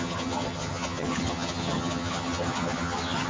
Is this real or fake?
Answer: fake